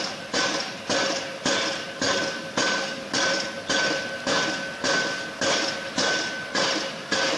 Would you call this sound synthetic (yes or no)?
no